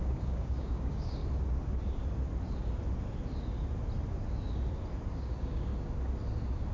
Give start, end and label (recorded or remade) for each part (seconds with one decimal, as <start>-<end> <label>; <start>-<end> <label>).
0.0-1.2 remade; 1.2-5.2 recorded; 5.2-5.7 remade; 5.7-6.7 recorded